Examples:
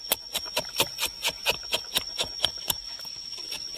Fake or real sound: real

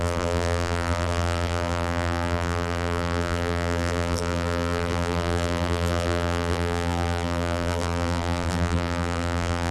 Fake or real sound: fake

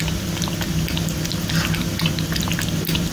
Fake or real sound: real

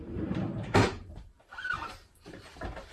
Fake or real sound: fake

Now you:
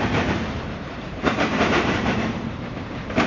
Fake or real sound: fake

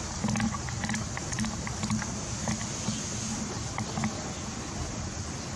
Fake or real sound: real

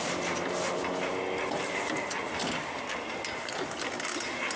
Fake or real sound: real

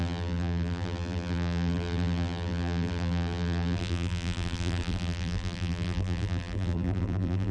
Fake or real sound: fake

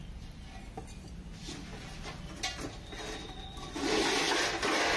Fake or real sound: real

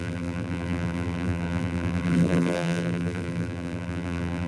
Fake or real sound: fake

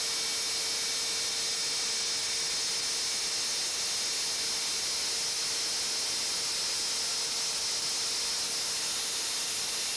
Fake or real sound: real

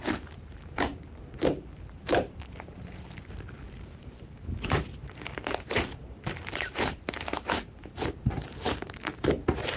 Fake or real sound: fake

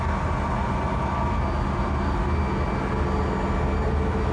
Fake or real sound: real